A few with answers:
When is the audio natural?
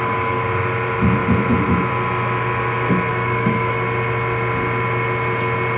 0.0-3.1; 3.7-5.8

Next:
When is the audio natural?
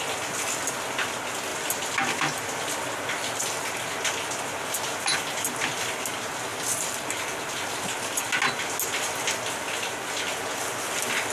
0.0-6.5; 8.3-11.3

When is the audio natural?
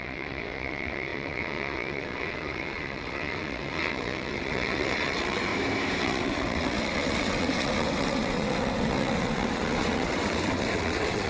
5.5-6.0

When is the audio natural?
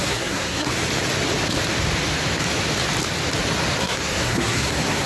0.7-3.8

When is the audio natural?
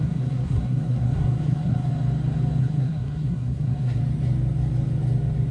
1.9-2.6; 4.0-5.5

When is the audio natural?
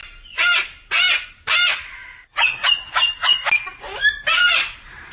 0.0-5.1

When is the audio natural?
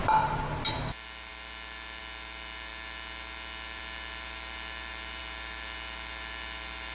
0.0-6.9